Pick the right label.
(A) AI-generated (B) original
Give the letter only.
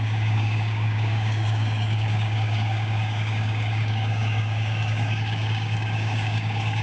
A